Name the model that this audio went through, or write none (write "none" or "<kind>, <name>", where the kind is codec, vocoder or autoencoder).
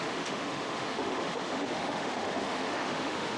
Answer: autoencoder, DAC-VAE